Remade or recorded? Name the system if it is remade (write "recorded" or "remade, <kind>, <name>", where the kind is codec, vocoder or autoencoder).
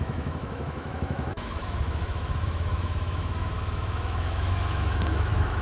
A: remade, autoencoder, DAC-VAE